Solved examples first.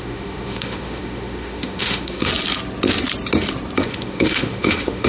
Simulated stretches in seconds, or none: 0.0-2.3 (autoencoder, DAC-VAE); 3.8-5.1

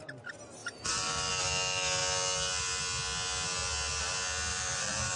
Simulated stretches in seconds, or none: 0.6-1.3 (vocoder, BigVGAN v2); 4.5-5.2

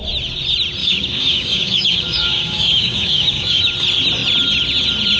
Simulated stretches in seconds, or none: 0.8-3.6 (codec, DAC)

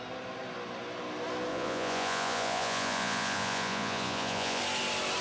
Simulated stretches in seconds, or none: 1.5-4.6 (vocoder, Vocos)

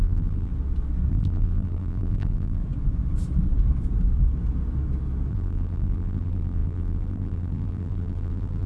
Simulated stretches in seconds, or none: 0.0-0.5 (vocoder, BigVGAN v2); 1.1-2.6; 5.3-8.7

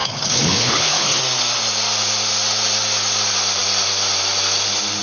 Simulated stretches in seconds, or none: 0.0-1.2 (codec, HILCodec)